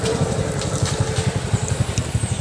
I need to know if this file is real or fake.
fake